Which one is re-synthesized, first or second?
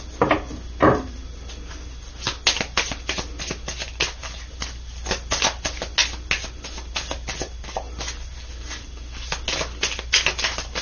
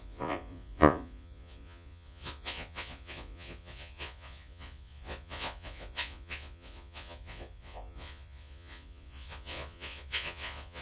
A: second